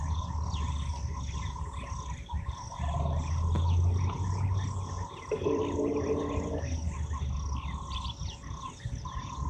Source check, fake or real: real